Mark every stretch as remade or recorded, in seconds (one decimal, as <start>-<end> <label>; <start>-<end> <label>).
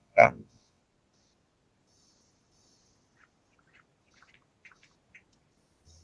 0.0-0.8 remade; 0.8-6.0 recorded